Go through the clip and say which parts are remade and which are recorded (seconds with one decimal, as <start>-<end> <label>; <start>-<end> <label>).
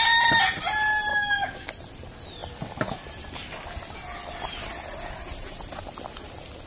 0.0-1.1 recorded; 1.1-1.7 remade; 1.7-6.7 recorded